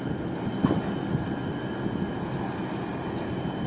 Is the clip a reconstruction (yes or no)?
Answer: no